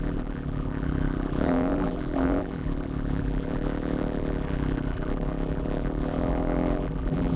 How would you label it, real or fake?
fake